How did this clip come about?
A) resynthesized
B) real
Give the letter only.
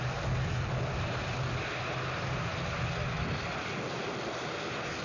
B